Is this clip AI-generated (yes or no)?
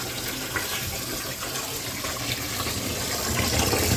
no